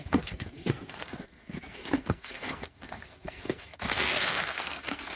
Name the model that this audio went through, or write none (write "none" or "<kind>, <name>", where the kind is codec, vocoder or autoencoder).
codec, SNAC